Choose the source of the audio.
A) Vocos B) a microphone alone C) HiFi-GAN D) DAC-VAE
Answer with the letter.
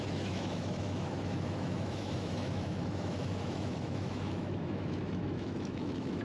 D